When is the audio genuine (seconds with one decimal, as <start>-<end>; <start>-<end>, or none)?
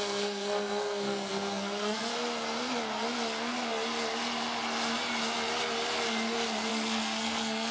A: 2.1-6.7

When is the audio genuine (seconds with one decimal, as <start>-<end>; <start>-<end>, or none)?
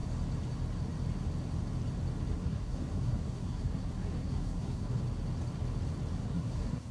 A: 0.0-2.3; 5.0-6.2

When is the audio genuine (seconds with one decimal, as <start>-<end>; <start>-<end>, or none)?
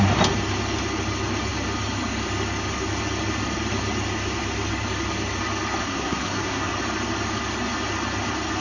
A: 0.0-5.8; 6.7-8.6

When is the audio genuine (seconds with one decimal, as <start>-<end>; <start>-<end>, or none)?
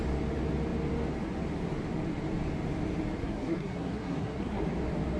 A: 0.0-3.2; 4.6-5.2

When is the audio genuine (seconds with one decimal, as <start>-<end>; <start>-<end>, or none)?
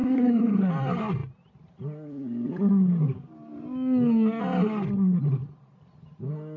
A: 0.7-6.6